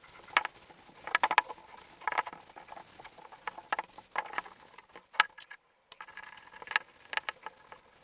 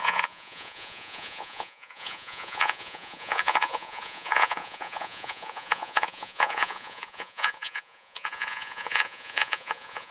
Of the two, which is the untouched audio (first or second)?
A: first